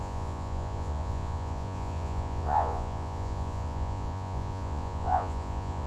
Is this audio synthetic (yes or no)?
yes